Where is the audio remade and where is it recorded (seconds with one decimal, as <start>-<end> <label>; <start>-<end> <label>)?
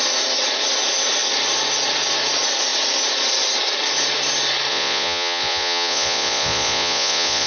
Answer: 0.0-4.7 recorded; 4.7-7.5 remade